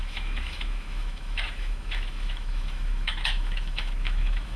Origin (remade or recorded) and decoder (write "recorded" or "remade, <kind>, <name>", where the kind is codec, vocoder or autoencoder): remade, autoencoder, DAC-VAE